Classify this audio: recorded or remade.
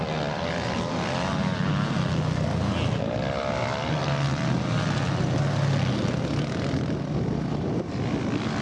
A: recorded